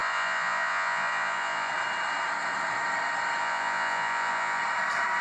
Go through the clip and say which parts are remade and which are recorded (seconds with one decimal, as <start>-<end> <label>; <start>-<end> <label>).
0.0-1.7 remade; 1.7-3.4 recorded; 3.4-4.6 remade; 4.6-5.2 recorded